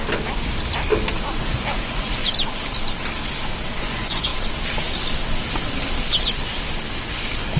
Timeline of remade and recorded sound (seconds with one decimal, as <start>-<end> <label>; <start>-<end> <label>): 0.0-1.4 recorded; 1.4-2.2 remade; 2.2-3.8 recorded; 3.8-4.3 remade; 4.3-7.6 recorded

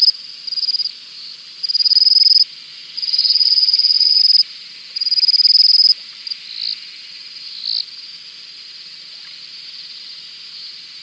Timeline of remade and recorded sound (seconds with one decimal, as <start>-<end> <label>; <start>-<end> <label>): 0.0-2.7 recorded; 2.7-4.2 remade; 4.2-11.0 recorded

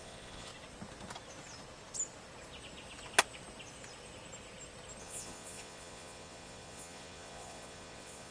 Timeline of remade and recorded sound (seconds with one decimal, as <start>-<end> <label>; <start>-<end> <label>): 0.0-0.5 remade; 0.5-5.0 recorded; 5.0-8.3 remade

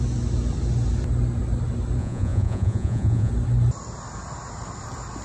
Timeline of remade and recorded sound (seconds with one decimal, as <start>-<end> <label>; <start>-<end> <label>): 0.0-2.0 recorded; 2.0-3.3 remade; 3.3-5.2 recorded

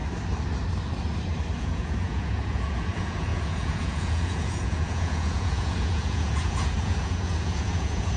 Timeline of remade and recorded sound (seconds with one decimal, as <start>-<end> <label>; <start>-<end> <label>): 0.0-1.6 recorded; 1.6-8.2 remade